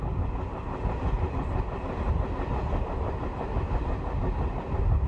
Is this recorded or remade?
recorded